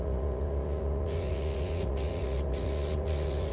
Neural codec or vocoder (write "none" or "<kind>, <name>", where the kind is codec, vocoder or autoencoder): vocoder, Vocos